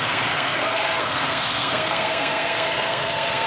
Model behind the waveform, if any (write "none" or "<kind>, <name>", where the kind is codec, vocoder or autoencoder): codec, SNAC